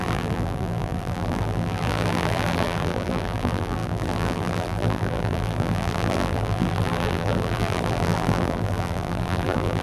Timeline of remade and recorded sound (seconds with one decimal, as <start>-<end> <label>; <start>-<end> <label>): 0.0-9.8 remade